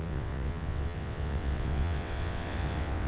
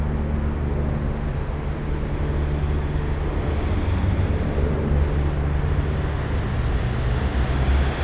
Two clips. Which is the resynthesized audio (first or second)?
first